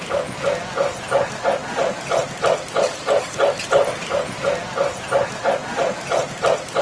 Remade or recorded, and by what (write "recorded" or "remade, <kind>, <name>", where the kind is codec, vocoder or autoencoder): recorded